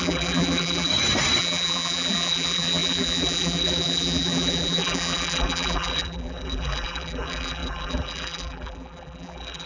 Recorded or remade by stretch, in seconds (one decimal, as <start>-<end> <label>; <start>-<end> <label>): 0.0-0.9 remade; 0.9-1.4 recorded; 1.4-9.7 remade

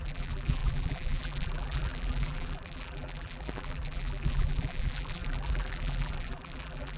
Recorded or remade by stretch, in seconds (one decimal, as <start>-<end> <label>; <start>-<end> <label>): 0.0-7.0 remade